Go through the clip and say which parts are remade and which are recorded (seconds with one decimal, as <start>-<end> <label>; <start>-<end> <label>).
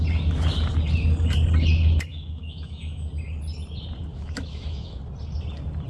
0.0-2.1 recorded; 2.1-3.1 remade; 3.1-4.1 recorded; 4.1-5.0 remade; 5.0-5.9 recorded